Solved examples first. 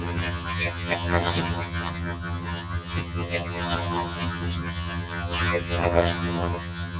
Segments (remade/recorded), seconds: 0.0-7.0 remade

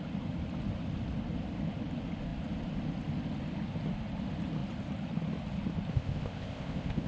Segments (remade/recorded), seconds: 0.0-5.9 recorded; 5.9-7.1 remade

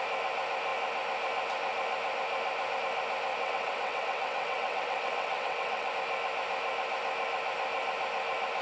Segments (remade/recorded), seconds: 0.0-3.3 recorded; 3.3-5.9 remade; 5.9-8.6 recorded

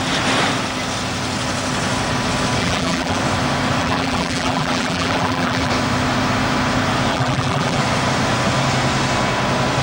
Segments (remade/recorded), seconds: 0.0-2.6 recorded; 2.6-3.2 remade; 3.2-3.8 recorded; 3.8-5.7 remade; 5.7-7.1 recorded; 7.1-7.8 remade; 7.8-9.8 recorded

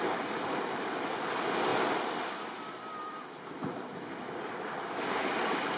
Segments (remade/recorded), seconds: 0.0-5.8 recorded